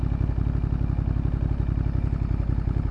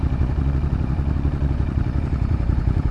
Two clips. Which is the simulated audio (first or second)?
second